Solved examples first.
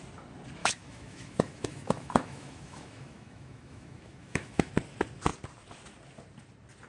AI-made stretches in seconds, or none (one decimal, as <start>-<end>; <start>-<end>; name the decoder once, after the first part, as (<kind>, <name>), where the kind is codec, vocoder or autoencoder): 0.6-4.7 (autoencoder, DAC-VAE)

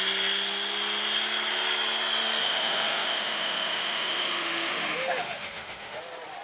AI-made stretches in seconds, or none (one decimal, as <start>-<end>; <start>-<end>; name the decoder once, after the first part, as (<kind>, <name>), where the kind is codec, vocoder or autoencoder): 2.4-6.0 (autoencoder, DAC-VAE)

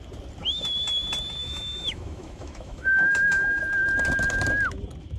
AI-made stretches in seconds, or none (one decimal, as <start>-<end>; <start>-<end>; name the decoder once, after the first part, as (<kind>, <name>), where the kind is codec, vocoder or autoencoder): 1.4-3.6 (autoencoder, DAC-VAE)

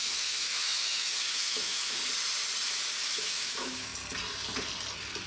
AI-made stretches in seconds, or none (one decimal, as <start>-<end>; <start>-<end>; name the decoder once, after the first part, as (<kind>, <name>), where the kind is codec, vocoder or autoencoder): 0.0-2.0 (autoencoder, DAC-VAE); 3.0-3.9